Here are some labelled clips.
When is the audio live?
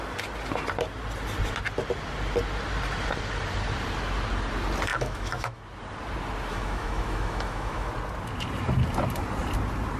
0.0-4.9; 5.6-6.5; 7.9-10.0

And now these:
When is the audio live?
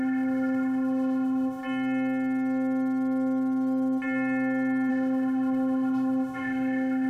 1.6-4.9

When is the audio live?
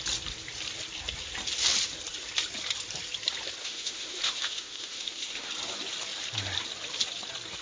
0.0-3.6; 5.5-7.6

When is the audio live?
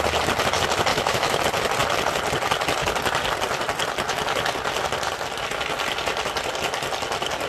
0.0-0.9; 1.4-7.5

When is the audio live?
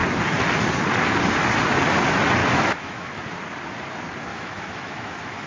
0.0-2.4; 3.2-4.3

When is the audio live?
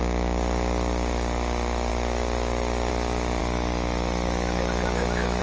0.0-3.4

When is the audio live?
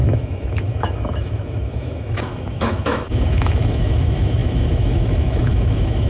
none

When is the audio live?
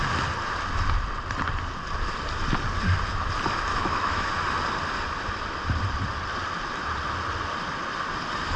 0.0-3.7; 4.3-8.6